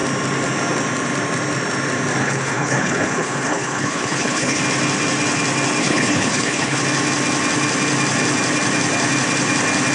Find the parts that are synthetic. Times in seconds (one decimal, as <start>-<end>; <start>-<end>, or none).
2.2-4.6; 5.8-6.8